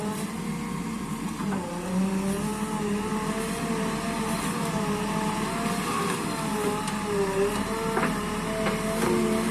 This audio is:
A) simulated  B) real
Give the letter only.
B